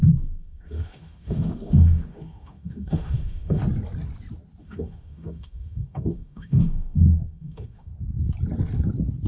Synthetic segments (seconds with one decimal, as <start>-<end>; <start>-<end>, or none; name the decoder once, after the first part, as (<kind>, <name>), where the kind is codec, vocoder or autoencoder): 0.0-3.6 (autoencoder, DAC-VAE); 4.6-7.9